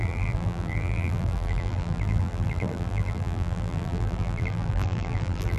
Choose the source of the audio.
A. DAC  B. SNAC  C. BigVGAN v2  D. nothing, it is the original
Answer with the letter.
C